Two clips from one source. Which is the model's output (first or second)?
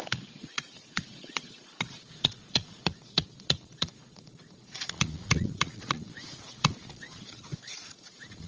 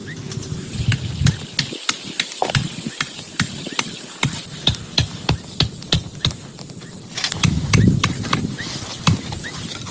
first